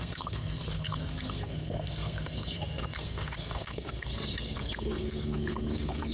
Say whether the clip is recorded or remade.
remade